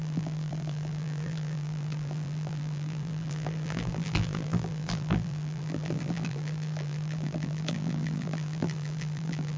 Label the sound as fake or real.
fake